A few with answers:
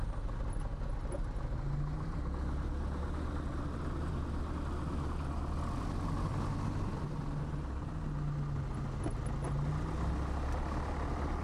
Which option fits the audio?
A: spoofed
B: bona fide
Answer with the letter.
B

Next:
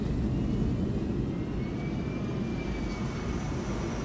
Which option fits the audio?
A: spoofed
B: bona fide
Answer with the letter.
B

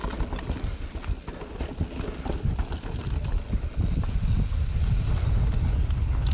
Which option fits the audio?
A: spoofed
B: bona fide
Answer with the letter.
B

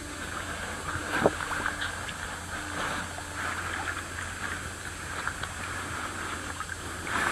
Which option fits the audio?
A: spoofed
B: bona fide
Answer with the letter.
B